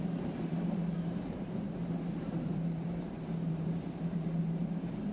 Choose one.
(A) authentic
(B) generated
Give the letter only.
B